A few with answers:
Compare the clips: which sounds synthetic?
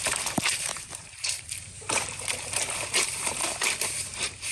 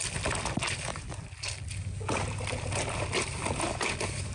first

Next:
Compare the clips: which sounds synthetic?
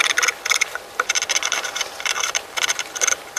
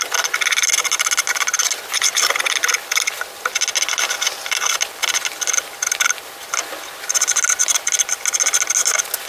first